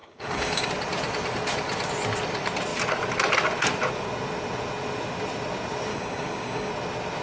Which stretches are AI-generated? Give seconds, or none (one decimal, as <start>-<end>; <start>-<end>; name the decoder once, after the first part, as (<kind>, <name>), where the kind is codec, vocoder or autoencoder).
0.0-0.7 (codec, DAC); 5.9-6.7